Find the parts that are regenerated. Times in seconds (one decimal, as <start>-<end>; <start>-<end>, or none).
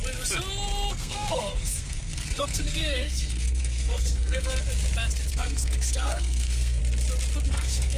0.9-4.5; 5.3-6.8; 7.5-8.0